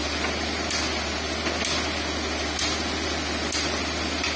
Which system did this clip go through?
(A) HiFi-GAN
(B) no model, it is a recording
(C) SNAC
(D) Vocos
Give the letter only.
B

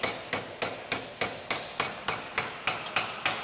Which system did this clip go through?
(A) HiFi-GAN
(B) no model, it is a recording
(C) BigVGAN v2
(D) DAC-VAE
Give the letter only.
B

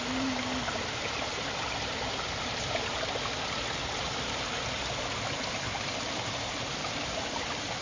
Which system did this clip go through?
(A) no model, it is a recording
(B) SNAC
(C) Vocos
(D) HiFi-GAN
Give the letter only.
A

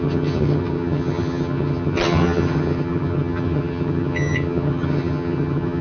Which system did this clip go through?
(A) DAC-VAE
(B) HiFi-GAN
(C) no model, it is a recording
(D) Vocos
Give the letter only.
B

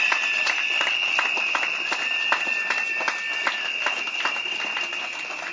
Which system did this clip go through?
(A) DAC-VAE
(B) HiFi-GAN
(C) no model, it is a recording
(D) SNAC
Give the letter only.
C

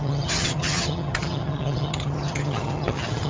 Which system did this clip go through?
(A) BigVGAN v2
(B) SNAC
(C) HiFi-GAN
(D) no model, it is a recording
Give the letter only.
C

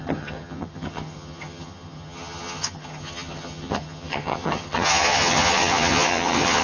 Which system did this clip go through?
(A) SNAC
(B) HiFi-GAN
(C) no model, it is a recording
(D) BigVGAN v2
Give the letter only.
B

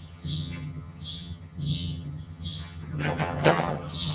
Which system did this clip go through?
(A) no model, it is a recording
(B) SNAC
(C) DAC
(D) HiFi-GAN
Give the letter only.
D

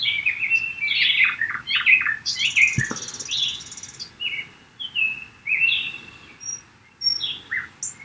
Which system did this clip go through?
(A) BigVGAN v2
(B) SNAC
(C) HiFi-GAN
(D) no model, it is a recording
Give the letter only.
D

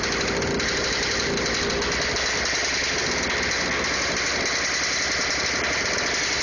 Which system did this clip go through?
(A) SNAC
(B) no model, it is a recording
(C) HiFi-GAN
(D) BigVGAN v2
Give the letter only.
B